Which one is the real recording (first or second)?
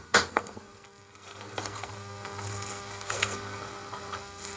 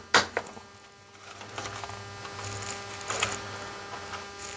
second